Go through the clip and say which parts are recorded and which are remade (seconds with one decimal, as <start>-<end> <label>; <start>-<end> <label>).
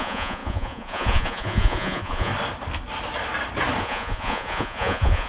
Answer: 0.0-2.3 remade; 2.3-3.8 recorded; 3.8-5.3 remade